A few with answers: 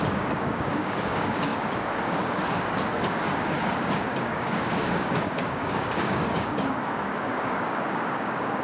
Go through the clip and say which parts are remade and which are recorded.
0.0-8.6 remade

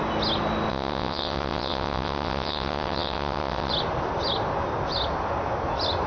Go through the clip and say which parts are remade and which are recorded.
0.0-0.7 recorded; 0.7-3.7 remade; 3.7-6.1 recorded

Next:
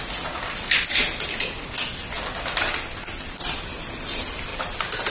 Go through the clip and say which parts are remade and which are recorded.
0.0-4.5 recorded; 4.5-5.1 remade

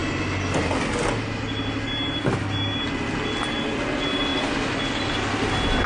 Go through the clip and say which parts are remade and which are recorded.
0.0-5.9 recorded